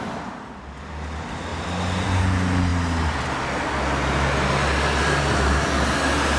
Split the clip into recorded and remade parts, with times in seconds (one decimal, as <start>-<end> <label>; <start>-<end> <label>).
0.0-6.4 recorded